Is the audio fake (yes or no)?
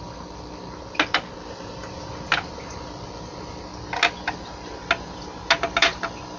no